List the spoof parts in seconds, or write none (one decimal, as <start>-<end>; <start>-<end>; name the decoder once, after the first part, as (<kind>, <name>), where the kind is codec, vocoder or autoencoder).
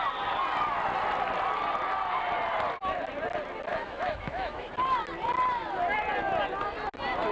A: 3.7-4.7 (autoencoder, DAC-VAE)